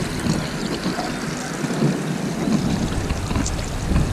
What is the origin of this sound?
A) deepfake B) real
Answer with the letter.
B